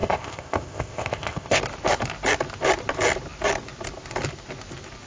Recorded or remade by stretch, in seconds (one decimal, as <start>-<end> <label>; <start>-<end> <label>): 0.0-1.6 remade; 1.6-5.1 recorded